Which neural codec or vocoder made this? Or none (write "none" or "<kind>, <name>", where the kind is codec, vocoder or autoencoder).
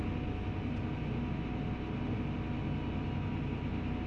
none